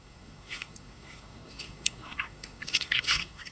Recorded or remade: remade